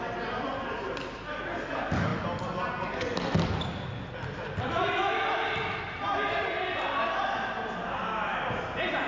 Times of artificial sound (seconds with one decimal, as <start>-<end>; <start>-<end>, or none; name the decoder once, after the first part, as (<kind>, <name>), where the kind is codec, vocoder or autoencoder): none